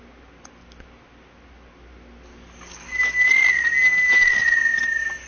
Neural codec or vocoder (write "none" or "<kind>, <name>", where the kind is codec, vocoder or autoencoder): none